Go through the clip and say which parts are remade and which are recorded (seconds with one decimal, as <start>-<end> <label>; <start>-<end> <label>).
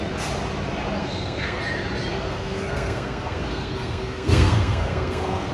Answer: 0.0-1.0 recorded; 1.0-1.6 remade; 1.6-2.1 recorded; 2.1-5.5 remade